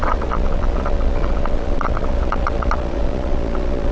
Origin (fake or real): fake